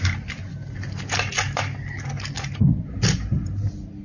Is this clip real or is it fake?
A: real